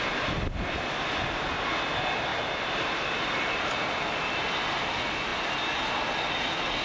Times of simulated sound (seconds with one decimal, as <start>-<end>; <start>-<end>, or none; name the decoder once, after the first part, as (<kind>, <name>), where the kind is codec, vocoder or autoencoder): 2.3-4.2 (vocoder, BigVGAN v2)